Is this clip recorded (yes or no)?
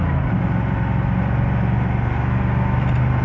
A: yes